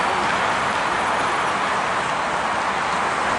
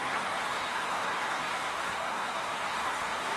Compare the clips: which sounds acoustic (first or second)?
first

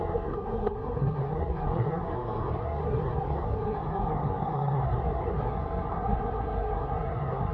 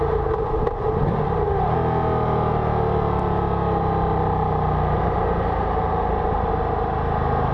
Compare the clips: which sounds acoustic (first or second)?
second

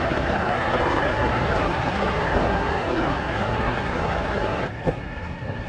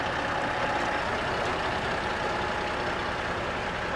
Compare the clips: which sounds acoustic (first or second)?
second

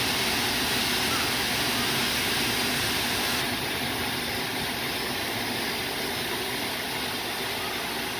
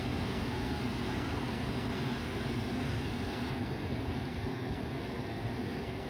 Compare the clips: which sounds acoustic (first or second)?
first